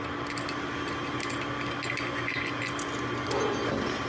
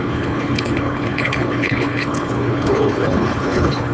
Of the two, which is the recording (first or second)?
first